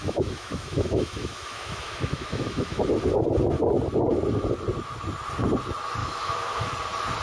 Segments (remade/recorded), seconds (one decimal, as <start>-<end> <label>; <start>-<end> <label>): 0.0-2.8 remade; 2.8-6.0 recorded; 6.0-6.7 remade; 6.7-7.2 recorded